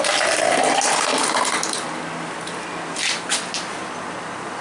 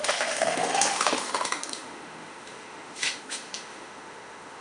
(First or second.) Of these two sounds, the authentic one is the first